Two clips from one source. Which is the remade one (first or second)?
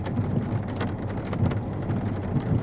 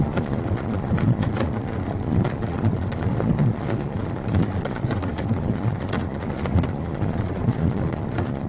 second